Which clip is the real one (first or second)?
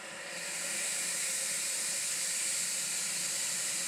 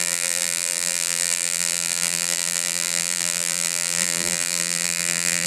first